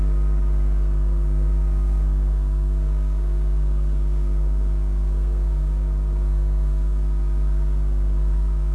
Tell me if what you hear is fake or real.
fake